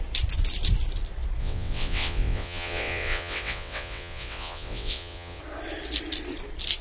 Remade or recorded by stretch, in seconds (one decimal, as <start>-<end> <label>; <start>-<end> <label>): 0.0-1.4 recorded; 1.4-5.4 remade; 5.4-6.8 recorded